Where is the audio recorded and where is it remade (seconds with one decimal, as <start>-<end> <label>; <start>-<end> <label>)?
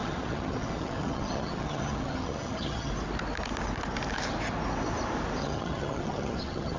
0.0-2.9 remade; 2.9-5.4 recorded; 5.4-6.8 remade